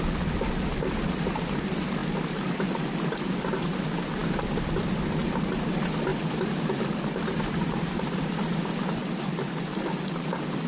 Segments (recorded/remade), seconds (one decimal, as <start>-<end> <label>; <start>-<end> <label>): 0.0-10.7 recorded